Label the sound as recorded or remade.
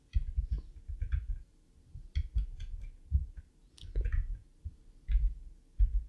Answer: recorded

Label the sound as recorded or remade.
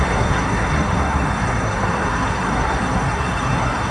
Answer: remade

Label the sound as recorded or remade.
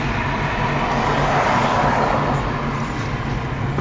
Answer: recorded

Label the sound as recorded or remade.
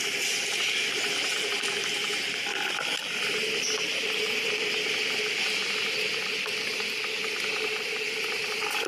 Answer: recorded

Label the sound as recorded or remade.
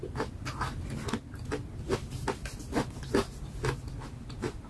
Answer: recorded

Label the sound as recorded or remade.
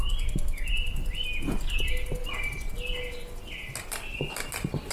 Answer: recorded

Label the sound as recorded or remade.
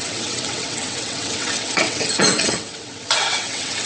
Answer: remade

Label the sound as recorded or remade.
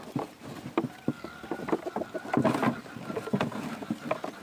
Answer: recorded